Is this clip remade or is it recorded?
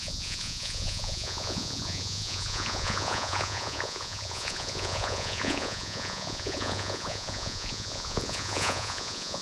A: remade